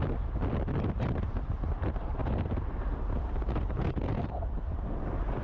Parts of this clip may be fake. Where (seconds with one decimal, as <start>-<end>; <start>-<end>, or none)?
none